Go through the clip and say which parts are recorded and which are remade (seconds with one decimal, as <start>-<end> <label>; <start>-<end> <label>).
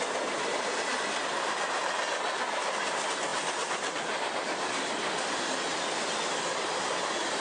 0.0-7.4 recorded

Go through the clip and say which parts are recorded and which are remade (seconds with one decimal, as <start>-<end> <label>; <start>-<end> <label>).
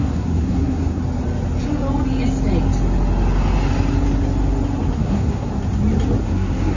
0.0-1.0 remade; 1.0-5.0 recorded; 5.0-5.5 remade; 5.5-6.2 recorded; 6.2-6.8 remade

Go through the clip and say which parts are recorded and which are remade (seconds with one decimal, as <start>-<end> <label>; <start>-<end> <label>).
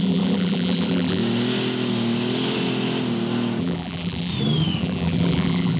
0.0-1.2 remade; 1.2-3.6 recorded; 3.6-4.3 remade; 4.3-4.8 recorded; 4.8-5.8 remade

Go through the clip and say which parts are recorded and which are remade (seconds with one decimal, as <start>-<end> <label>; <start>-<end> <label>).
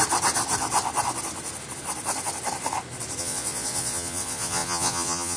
0.0-3.2 recorded; 3.2-5.4 remade